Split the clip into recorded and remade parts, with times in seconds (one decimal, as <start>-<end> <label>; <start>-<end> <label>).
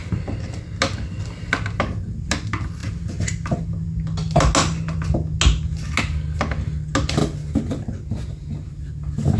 0.0-9.4 recorded